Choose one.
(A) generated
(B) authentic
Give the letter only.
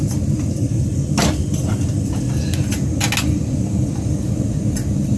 B